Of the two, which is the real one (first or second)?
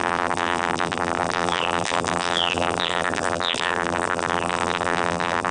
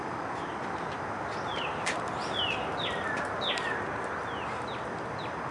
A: second